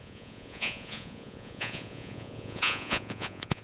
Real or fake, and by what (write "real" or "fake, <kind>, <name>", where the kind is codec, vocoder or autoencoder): fake, vocoder, Vocos